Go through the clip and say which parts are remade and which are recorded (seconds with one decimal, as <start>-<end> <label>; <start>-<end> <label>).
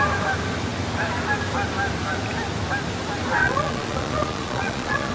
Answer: 0.0-3.4 recorded; 3.4-5.1 remade